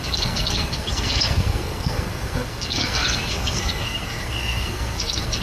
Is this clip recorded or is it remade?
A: remade